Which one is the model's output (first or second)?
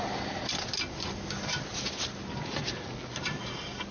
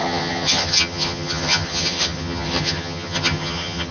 second